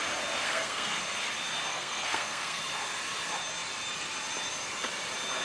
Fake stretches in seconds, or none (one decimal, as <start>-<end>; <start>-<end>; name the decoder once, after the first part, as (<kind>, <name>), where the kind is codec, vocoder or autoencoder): 0.4-1.0 (codec, SNAC); 1.7-2.6